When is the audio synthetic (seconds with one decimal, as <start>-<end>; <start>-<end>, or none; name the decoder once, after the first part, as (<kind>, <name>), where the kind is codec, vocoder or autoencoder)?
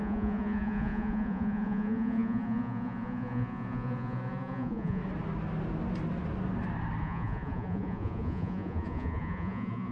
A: 0.0-5.0 (vocoder, Vocos); 7.0-9.9